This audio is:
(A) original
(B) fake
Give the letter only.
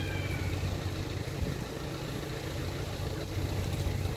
A